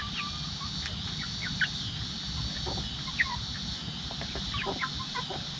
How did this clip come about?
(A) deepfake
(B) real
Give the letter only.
B